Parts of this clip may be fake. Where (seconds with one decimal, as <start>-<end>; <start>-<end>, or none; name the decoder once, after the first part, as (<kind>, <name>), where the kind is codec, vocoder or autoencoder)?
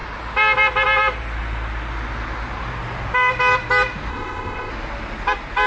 4.1-4.7 (codec, ZipCodec)